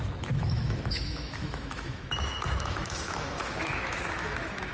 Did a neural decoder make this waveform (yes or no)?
yes